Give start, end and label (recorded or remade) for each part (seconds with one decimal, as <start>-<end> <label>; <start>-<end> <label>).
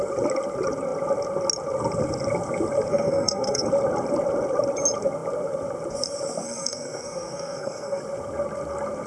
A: 0.0-2.9 recorded; 2.9-3.7 remade; 3.7-6.4 recorded; 6.4-8.0 remade; 8.0-9.1 recorded